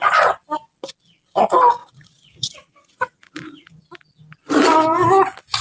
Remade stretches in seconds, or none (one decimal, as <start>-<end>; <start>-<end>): 1.8-3.8